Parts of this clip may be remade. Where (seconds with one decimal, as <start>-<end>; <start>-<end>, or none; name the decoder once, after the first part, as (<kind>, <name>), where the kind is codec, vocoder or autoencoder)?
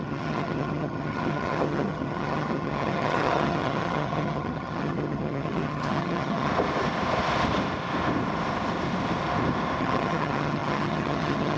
0.0-6.5 (vocoder, HiFi-GAN); 9.8-11.6